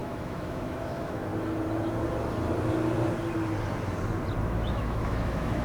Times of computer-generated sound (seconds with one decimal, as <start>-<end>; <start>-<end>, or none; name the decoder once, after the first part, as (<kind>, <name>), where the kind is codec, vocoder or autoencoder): 0.0-1.3 (autoencoder, DAC-VAE); 4.4-5.6